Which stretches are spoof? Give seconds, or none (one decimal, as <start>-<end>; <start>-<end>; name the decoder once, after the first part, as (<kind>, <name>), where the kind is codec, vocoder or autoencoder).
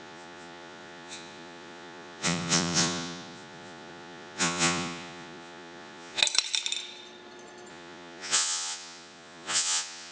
0.0-6.2 (vocoder, Vocos); 7.7-10.1